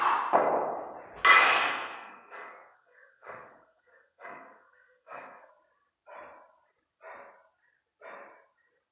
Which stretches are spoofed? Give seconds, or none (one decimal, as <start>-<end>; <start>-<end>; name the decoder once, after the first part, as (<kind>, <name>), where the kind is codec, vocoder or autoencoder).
1.6-5.5 (codec, SNAC)